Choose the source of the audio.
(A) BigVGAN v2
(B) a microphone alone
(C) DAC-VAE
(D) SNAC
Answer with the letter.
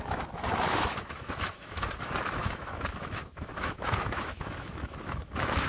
C